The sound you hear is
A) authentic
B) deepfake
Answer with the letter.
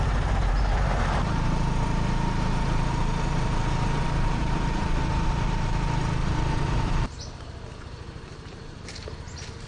B